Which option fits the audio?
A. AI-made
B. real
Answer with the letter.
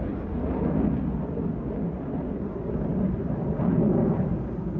B